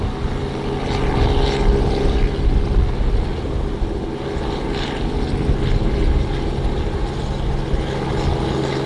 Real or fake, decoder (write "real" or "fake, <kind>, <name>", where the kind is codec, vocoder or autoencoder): real